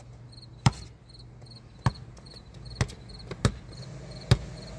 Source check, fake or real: real